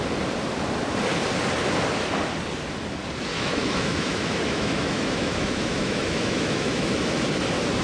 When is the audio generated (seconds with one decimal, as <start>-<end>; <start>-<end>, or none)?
3.3-6.9